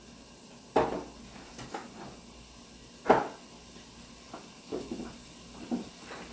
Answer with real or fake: real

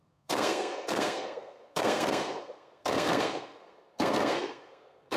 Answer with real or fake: fake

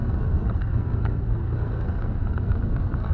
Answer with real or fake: fake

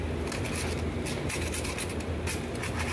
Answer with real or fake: real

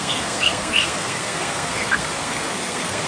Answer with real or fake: fake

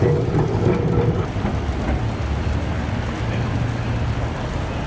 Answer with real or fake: real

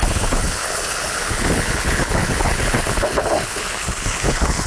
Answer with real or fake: fake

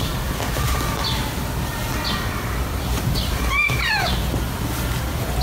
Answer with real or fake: real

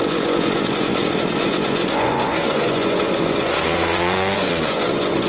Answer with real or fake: fake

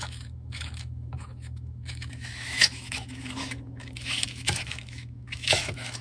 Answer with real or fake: fake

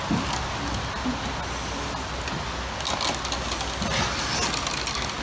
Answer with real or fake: real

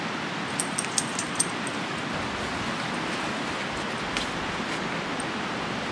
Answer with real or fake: real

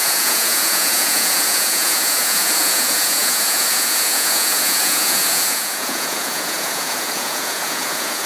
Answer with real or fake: fake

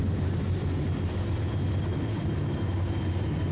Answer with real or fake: real